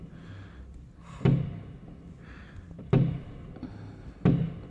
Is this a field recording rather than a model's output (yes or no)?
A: yes